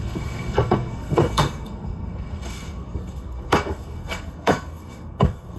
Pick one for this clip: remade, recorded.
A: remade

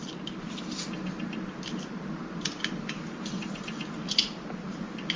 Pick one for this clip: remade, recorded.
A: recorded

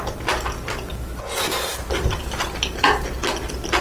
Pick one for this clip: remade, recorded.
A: recorded